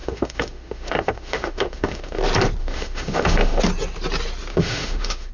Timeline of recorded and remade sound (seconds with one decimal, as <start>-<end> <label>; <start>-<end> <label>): 0.0-2.2 remade; 2.2-2.6 recorded; 2.6-3.6 remade; 3.6-4.5 recorded; 4.5-5.3 remade